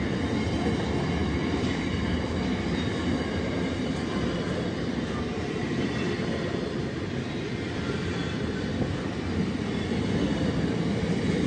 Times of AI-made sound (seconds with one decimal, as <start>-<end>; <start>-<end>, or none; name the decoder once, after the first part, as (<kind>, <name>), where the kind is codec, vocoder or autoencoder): none